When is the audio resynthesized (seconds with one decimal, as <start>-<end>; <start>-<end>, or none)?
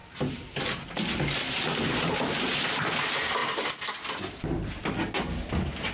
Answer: none